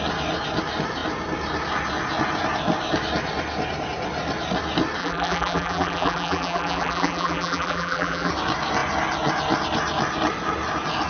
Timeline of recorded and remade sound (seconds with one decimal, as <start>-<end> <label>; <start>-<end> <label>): 0.0-5.0 recorded; 5.0-8.3 remade; 8.3-11.1 recorded